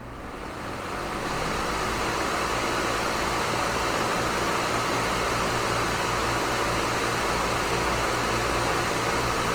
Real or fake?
real